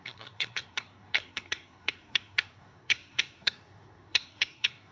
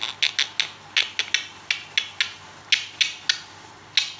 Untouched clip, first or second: second